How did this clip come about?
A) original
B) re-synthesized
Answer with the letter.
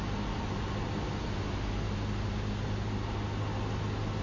A